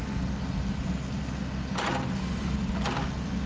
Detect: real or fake real